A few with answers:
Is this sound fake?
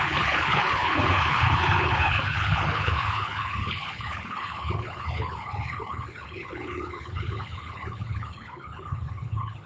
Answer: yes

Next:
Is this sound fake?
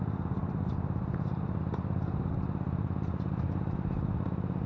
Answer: no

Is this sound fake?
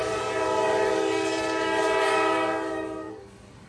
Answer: yes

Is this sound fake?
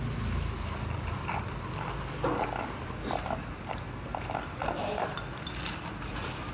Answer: no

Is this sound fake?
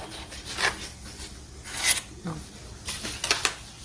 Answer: no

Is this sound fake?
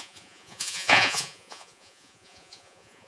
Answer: yes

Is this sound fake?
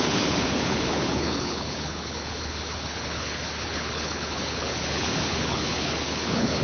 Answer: yes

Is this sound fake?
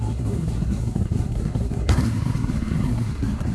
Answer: yes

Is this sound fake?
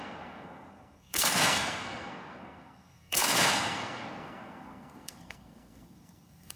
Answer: yes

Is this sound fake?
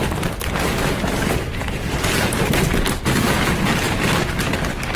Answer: no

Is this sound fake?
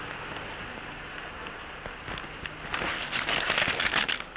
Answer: no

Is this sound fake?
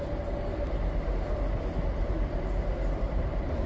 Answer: no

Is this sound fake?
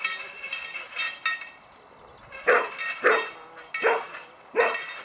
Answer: no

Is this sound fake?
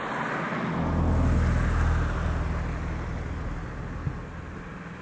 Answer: no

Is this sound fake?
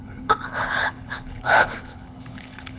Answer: yes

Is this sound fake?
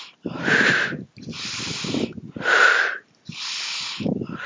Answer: no